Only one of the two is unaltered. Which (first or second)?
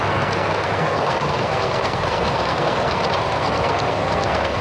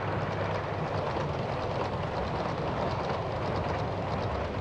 second